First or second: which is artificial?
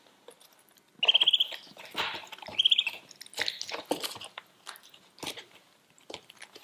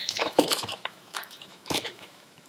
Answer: second